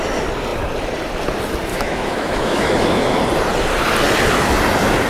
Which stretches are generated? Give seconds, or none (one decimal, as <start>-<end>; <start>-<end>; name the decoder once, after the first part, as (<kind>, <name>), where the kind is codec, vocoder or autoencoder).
1.7-3.2 (autoencoder, DAC-VAE)

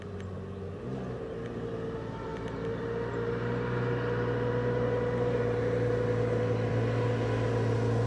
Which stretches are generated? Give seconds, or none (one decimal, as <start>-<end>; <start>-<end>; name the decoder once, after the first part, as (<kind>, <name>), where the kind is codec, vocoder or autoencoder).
none

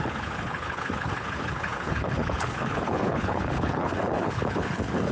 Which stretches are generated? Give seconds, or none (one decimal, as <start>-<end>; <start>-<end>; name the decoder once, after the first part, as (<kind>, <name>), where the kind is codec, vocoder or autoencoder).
0.0-5.1 (codec, HILCodec)

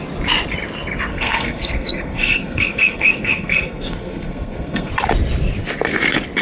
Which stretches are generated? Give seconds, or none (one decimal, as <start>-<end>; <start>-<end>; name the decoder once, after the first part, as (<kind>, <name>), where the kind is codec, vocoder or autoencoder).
1.1-4.9 (codec, SNAC)